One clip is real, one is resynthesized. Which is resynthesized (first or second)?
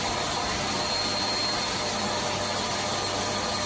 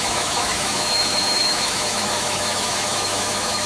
second